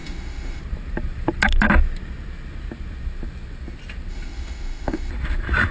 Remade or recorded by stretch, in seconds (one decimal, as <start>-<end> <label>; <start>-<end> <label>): 0.0-0.6 remade; 0.6-4.1 recorded; 4.1-5.1 remade; 5.1-5.7 recorded